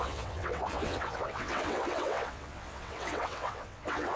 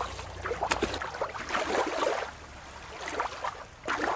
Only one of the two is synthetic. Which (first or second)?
first